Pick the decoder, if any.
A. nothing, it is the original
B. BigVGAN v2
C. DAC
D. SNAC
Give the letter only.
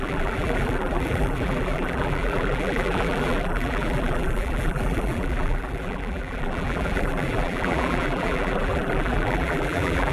B